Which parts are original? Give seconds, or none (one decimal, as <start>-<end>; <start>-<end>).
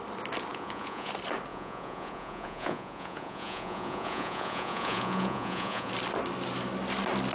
0.0-0.5; 1.1-1.5; 5.9-7.3